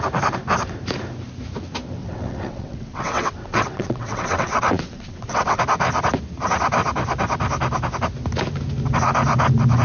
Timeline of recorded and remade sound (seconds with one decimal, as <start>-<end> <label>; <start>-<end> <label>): 0.0-2.0 recorded; 2.0-5.6 remade; 5.6-9.8 recorded